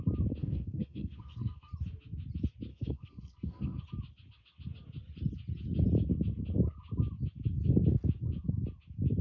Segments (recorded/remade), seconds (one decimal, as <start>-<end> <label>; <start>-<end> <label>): 0.0-0.4 recorded; 0.4-1.7 remade; 1.7-2.7 recorded; 2.7-3.8 remade; 3.8-9.2 recorded